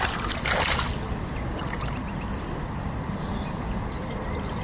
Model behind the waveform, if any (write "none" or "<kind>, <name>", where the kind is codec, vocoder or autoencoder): none